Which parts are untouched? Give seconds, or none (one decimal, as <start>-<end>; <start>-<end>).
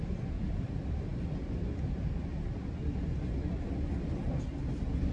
0.0-5.1